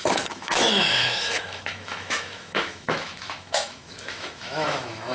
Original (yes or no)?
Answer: no